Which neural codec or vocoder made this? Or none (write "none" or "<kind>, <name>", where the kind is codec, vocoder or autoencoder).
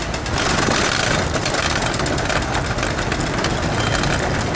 none